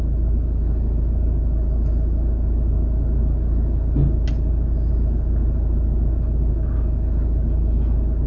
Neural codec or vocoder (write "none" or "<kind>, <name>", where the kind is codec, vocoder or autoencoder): none